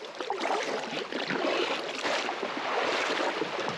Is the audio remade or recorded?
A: recorded